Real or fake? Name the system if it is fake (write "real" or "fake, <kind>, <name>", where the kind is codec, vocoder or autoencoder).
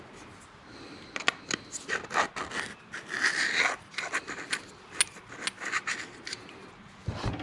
real